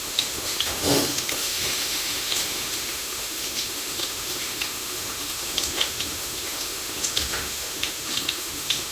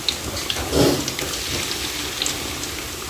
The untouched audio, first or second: second